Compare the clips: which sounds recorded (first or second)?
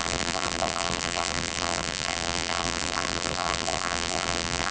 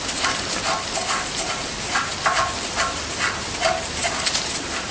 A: second